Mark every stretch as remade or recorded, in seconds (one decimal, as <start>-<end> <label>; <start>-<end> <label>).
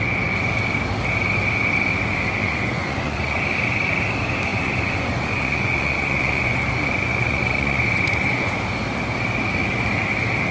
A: 0.0-2.4 recorded; 2.4-3.4 remade; 3.4-4.5 recorded; 4.5-8.5 remade; 8.5-10.5 recorded